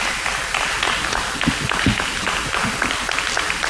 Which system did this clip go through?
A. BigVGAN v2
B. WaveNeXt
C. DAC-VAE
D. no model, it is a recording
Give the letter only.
D